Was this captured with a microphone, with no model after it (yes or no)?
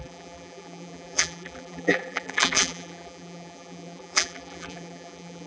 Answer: no